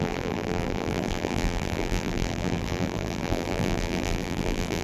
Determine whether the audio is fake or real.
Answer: fake